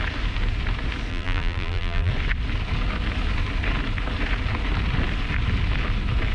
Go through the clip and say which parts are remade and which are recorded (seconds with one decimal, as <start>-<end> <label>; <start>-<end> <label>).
0.0-1.1 recorded; 1.1-2.1 remade; 2.1-6.3 recorded